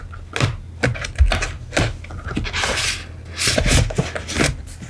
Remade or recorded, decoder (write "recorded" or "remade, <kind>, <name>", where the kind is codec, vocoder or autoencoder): recorded